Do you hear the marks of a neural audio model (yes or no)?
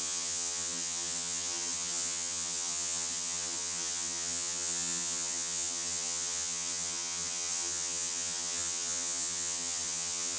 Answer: yes